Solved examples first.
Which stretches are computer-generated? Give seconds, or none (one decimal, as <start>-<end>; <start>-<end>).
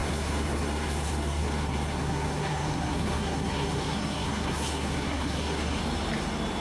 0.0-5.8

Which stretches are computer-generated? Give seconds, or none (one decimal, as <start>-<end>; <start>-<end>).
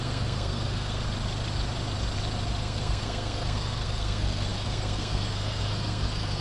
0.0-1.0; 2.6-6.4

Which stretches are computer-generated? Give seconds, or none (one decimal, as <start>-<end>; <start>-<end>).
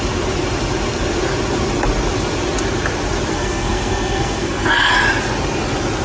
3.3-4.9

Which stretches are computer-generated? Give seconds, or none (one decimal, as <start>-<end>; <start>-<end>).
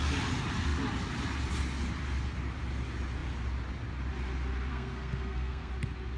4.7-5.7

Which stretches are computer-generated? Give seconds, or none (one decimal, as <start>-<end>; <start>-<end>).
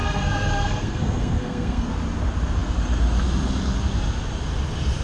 0.0-1.9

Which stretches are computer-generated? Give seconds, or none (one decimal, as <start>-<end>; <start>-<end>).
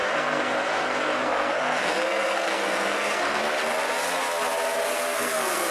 0.0-3.4; 4.8-5.7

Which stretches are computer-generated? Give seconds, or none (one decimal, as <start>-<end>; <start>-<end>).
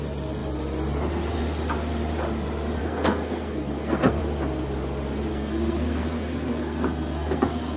2.8-4.2; 5.3-7.8